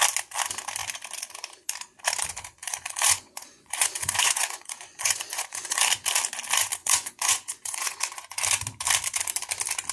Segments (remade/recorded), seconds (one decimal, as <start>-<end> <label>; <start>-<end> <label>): 0.0-2.6 recorded; 2.6-5.8 remade; 5.8-6.8 recorded; 6.8-8.4 remade; 8.4-9.9 recorded